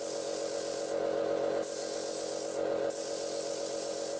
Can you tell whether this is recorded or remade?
recorded